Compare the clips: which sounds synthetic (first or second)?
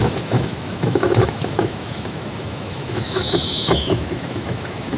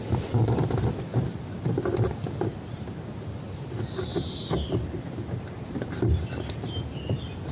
first